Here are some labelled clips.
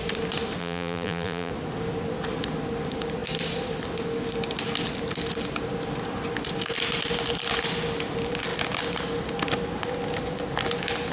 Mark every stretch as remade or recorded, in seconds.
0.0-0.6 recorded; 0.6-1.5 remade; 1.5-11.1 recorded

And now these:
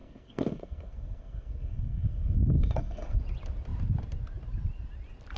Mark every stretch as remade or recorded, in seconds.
0.0-3.2 remade; 3.2-5.4 recorded

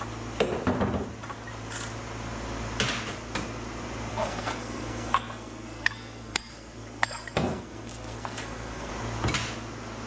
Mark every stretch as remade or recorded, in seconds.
0.0-4.1 recorded; 4.1-8.9 remade; 8.9-10.1 recorded

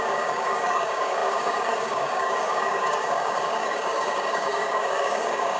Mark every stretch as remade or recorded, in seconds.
0.0-5.6 remade